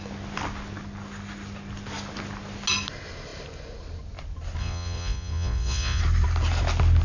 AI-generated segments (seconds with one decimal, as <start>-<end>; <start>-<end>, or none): 4.6-6.0

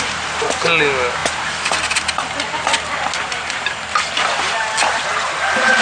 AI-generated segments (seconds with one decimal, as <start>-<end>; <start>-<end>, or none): none